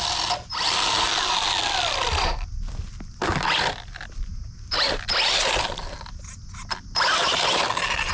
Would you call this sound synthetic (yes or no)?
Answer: no